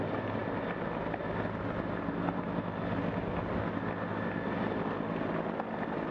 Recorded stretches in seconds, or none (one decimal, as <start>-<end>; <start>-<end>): 0.0-6.1